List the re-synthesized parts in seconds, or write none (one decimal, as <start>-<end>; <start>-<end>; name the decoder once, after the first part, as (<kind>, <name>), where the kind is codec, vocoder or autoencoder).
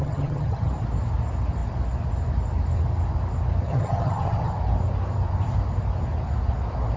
0.0-0.7 (vocoder, HiFi-GAN); 3.7-4.5